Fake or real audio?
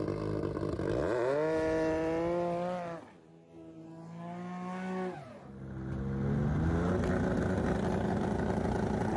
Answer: real